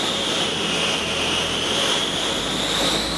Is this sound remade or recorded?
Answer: recorded